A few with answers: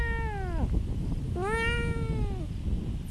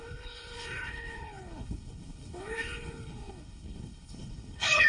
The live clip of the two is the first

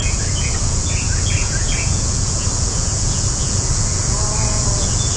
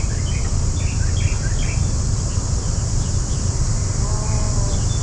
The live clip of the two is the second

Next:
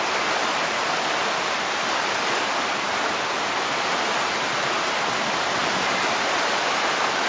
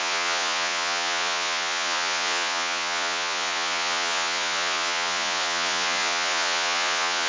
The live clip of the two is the first